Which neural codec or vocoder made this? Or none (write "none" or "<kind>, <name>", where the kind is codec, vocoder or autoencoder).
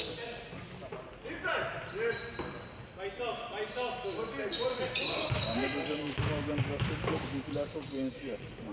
none